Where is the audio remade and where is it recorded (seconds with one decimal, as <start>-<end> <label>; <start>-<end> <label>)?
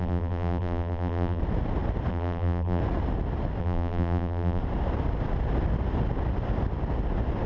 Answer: 0.0-1.4 remade; 1.4-2.1 recorded; 2.1-2.8 remade; 2.8-3.6 recorded; 3.6-4.6 remade; 4.6-7.5 recorded